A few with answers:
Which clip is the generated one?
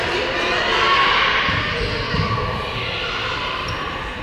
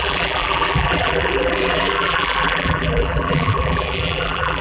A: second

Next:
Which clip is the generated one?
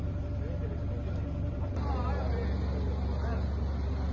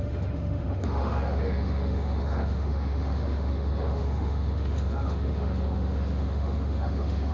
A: second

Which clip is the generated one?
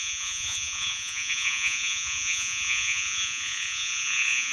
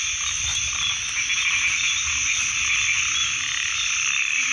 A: first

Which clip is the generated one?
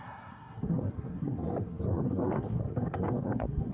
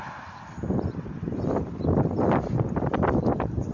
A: first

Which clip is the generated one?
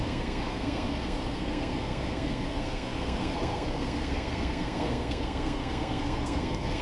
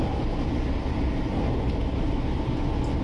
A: first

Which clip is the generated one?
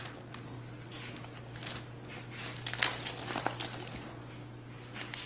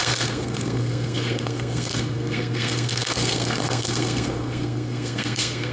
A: second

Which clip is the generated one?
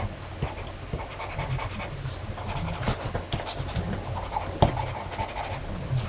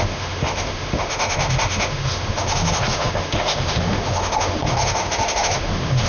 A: second